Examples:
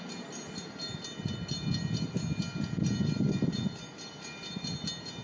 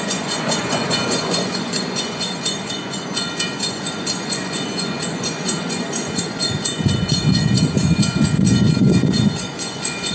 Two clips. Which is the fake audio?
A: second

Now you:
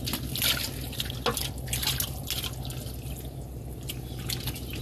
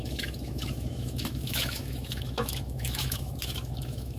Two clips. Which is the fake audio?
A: second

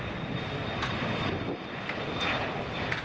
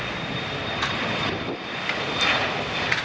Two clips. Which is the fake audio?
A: second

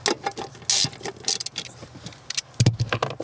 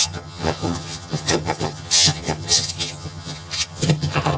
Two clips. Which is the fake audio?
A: second